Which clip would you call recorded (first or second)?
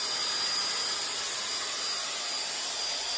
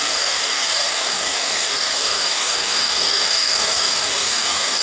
first